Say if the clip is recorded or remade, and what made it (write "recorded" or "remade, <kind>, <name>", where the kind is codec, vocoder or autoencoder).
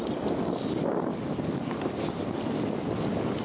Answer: recorded